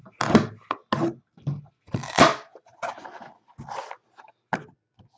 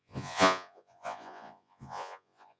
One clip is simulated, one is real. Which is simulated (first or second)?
second